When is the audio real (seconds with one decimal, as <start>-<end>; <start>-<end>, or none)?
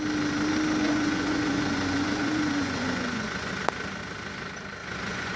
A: 0.0-0.8; 3.5-4.8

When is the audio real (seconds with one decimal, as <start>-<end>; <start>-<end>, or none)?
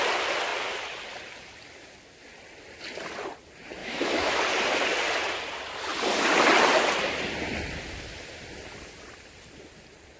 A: 0.0-3.8; 4.4-10.2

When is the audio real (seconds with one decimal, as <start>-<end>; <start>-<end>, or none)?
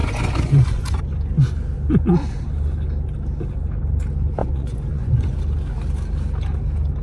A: 1.0-4.4; 5.3-7.0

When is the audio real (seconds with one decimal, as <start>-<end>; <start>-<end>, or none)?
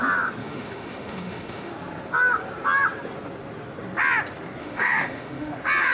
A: 0.0-0.4; 1.7-4.6; 5.5-5.9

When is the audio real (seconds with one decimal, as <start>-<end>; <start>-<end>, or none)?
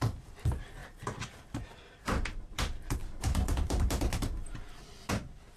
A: 4.4-5.1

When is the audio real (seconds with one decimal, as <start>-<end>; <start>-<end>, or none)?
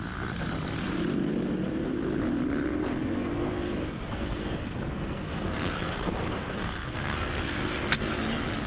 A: 0.0-3.0; 8.1-8.7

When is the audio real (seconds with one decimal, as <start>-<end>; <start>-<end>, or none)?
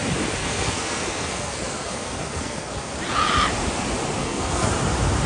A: 0.0-0.4; 3.0-4.2; 4.7-5.3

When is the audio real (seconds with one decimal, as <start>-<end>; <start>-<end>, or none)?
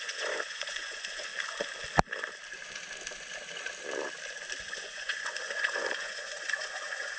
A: 1.3-4.6